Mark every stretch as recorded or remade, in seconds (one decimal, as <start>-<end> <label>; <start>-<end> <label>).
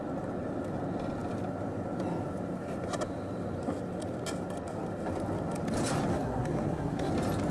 0.0-6.1 recorded; 6.1-7.1 remade; 7.1-7.5 recorded